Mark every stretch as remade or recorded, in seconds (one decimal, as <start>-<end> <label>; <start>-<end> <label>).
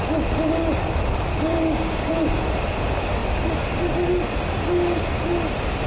0.0-1.3 recorded; 1.3-2.1 remade; 2.1-5.9 recorded